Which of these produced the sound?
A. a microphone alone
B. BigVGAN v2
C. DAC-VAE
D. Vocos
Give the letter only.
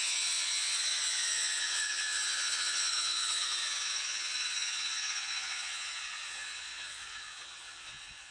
D